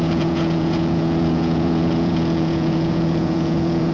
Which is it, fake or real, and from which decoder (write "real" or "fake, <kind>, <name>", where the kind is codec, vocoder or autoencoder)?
fake, vocoder, Vocos